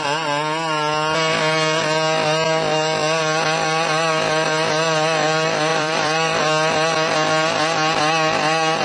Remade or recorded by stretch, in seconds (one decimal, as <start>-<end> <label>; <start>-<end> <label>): 0.0-5.7 recorded; 5.7-6.4 remade; 6.4-8.8 recorded